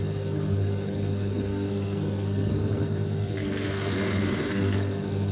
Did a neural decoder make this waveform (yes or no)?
yes